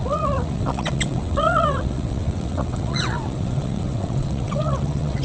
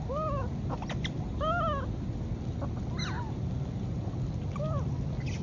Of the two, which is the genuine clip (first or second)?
second